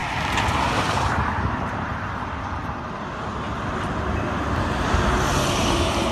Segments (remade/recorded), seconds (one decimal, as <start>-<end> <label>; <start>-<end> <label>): 0.0-0.5 recorded; 0.5-1.9 remade; 1.9-5.6 recorded; 5.6-6.1 remade